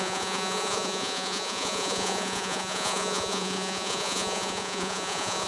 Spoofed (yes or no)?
yes